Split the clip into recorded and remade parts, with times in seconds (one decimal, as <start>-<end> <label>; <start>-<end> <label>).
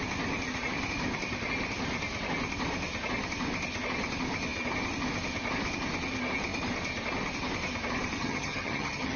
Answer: 0.0-8.2 recorded; 8.2-9.2 remade